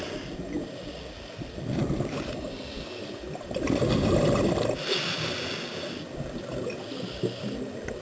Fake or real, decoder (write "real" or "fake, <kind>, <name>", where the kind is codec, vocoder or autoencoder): real